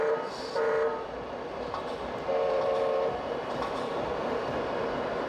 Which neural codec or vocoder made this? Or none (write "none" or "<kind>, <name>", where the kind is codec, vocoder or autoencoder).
vocoder, BigVGAN v2